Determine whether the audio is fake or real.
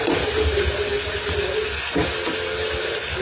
real